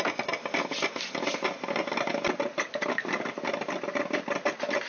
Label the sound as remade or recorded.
recorded